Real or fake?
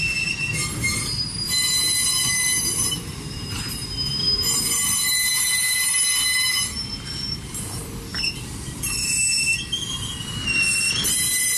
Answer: real